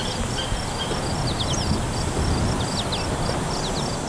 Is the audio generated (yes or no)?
no